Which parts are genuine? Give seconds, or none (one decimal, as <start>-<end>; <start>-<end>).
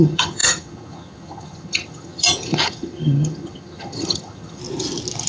4.6-5.3